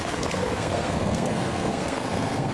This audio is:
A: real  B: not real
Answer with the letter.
B